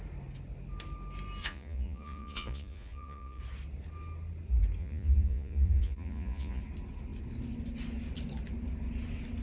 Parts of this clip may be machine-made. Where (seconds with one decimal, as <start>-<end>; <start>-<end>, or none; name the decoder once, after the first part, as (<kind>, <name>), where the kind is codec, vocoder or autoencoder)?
1.4-3.4 (vocoder, Vocos); 4.8-6.6